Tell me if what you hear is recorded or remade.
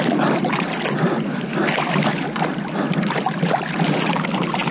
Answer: recorded